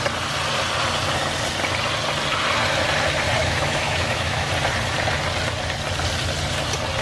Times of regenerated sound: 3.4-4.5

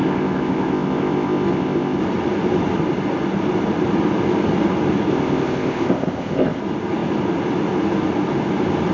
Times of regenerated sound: 0.0-2.0; 5.1-6.6

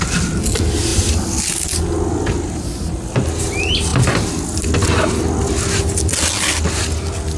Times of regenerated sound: none

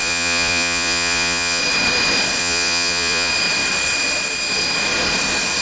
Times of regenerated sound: 0.0-1.6; 2.4-3.3

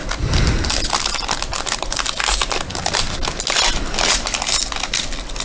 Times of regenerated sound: none

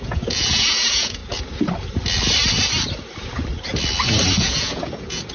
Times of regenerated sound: 0.0-1.2; 4.4-5.3

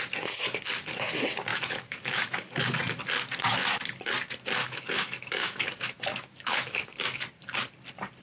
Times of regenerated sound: 1.5-2.6; 4.6-7.2